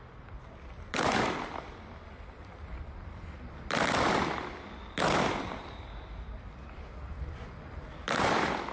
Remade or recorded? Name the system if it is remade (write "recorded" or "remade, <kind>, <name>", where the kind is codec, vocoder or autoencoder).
remade, vocoder, BigVGAN v2